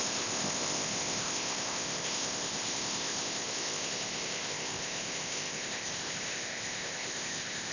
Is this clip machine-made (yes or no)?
yes